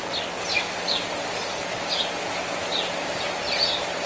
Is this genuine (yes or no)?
yes